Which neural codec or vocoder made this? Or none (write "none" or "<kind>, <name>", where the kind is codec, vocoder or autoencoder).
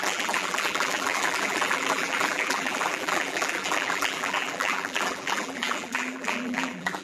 vocoder, BigVGAN v2